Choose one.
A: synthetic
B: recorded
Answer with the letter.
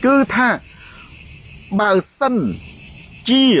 B